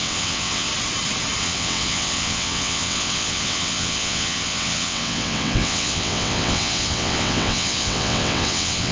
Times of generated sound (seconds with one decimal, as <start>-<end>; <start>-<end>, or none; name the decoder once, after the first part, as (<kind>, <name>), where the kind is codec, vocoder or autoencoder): 0.0-0.7 (vocoder, WaveNeXt); 1.4-8.9